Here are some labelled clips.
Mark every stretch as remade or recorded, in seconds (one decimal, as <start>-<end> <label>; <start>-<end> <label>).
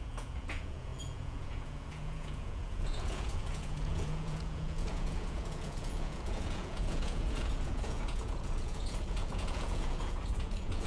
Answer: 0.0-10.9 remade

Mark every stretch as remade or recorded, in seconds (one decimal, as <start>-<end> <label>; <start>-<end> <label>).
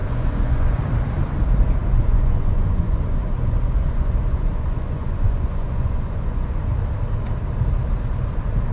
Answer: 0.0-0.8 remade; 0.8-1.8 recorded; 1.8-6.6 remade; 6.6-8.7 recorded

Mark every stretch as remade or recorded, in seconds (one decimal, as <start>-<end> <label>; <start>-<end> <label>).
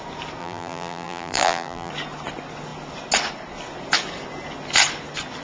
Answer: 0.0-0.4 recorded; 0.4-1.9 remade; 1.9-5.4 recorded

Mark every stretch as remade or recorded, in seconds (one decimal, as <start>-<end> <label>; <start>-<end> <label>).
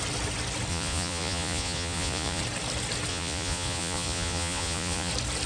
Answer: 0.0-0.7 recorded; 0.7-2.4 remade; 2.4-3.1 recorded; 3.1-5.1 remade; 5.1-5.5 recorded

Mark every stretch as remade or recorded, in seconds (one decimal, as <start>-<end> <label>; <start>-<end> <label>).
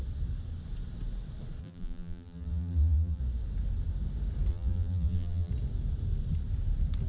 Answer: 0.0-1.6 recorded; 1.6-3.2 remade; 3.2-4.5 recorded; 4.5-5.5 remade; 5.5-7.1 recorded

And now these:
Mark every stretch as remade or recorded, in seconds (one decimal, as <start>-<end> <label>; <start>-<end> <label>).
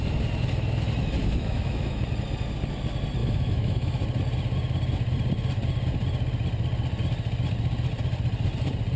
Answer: 0.0-1.2 recorded; 1.2-2.0 remade; 2.0-3.2 recorded; 3.2-4.0 remade; 4.0-9.0 recorded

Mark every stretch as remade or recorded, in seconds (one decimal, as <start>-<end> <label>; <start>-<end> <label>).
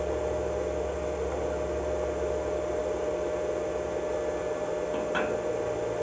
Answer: 0.0-6.0 recorded